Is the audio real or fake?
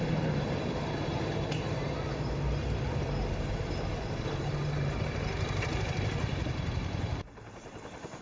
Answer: fake